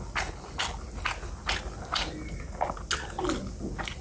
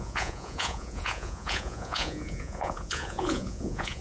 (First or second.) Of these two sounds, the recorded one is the first